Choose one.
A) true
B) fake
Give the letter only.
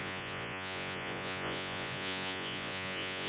B